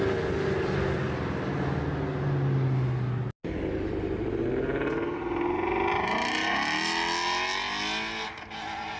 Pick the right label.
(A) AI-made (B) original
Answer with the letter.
B